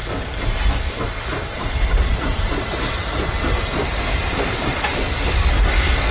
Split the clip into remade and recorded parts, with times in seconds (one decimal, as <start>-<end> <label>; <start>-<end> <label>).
0.0-0.7 remade; 0.7-1.3 recorded; 1.3-2.5 remade; 2.5-3.0 recorded; 3.0-4.8 remade; 4.8-6.1 recorded